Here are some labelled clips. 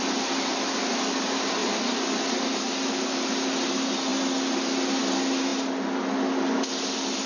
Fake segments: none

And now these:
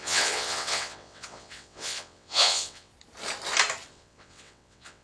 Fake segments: 0.0-2.9 (vocoder, WaveNeXt); 3.9-5.0

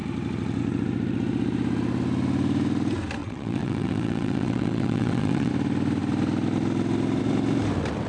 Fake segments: 3.2-5.5 (vocoder, WaveNeXt)

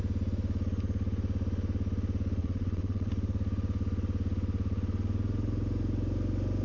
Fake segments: 2.4-3.1 (vocoder, WaveNeXt)

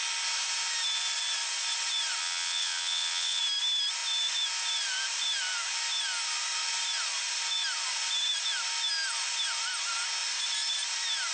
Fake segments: 2.2-3.4 (vocoder, WaveNeXt)

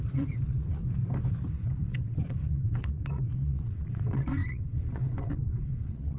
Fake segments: 0.0-0.8 (vocoder, WaveNeXt); 1.5-6.2

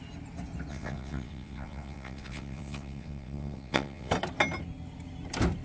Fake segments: 0.7-4.1 (vocoder, WaveNeXt)